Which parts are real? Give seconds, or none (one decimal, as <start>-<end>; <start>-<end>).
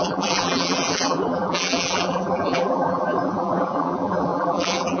none